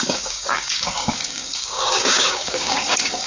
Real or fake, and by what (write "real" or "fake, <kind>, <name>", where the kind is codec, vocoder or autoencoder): fake, codec, DAC